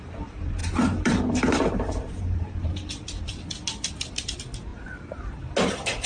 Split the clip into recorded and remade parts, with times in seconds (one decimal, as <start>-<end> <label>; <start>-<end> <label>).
0.0-0.6 recorded; 0.6-2.9 remade; 2.9-4.7 recorded; 4.7-5.4 remade; 5.4-6.1 recorded